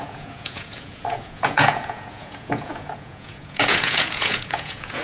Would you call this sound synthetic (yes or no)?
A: yes